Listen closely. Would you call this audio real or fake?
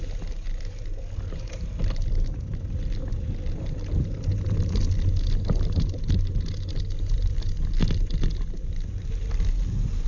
real